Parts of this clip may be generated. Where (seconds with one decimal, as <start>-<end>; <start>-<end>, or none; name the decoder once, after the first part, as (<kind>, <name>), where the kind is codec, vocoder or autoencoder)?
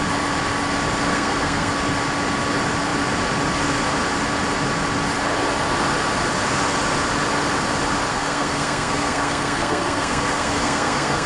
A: 1.1-1.7 (codec, SNAC); 8.1-11.3